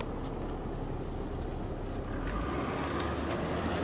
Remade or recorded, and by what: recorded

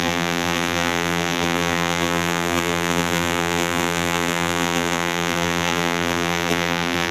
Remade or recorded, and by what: remade, vocoder, BigVGAN v2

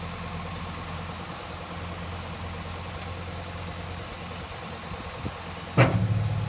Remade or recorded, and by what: recorded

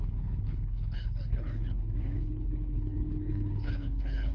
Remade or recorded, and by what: remade, codec, HILCodec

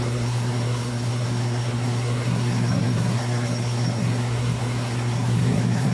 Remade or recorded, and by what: remade, codec, SNAC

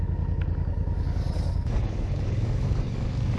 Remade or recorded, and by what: remade, codec, DAC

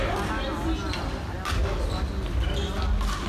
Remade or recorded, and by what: recorded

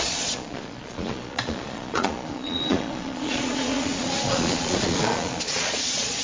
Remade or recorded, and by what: remade, vocoder, Vocos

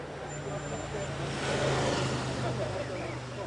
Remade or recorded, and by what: recorded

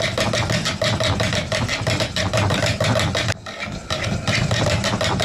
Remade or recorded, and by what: recorded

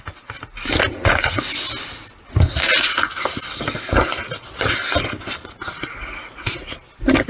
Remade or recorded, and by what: recorded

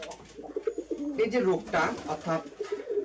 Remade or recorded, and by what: recorded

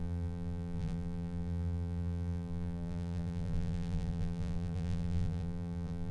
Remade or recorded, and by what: remade, vocoder, BigVGAN v2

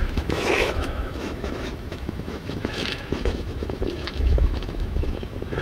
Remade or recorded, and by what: remade, autoencoder, DAC-VAE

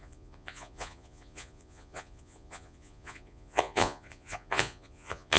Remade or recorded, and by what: remade, vocoder, Vocos